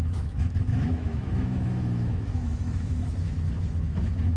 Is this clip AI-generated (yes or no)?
yes